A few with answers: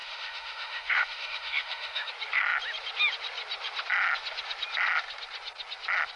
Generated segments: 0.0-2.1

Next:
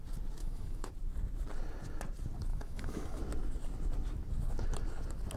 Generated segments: 0.4-0.9; 2.5-3.2

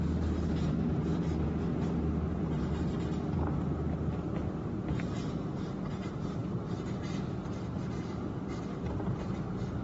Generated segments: none

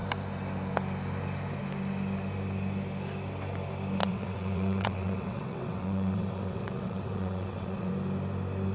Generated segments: 4.0-7.9